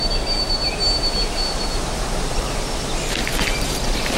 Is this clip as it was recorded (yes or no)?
yes